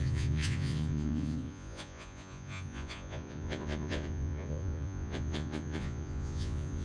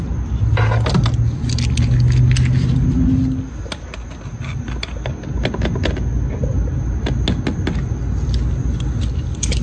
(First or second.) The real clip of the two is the second